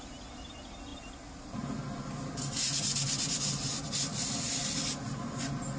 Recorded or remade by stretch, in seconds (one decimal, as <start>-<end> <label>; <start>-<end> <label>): 0.0-5.8 recorded